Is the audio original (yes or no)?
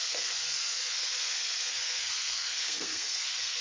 no